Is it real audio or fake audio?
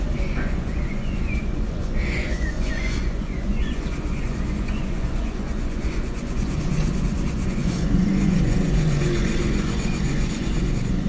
fake